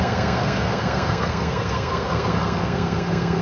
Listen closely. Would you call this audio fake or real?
fake